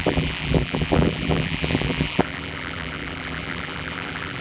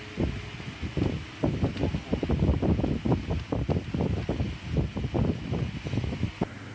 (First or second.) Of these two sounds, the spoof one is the first